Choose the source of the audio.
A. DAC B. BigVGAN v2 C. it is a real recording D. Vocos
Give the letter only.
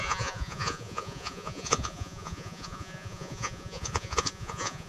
D